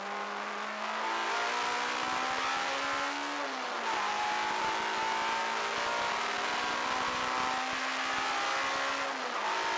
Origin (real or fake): real